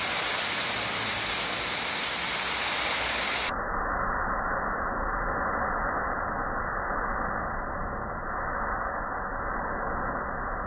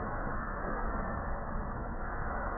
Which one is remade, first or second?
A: second